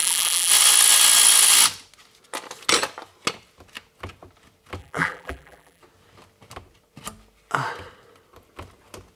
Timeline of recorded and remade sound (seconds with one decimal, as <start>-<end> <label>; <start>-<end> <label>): 0.0-0.5 remade; 0.5-4.8 recorded; 4.8-5.8 remade; 5.8-9.2 recorded